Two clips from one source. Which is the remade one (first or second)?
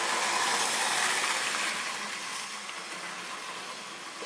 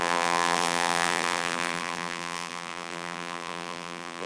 second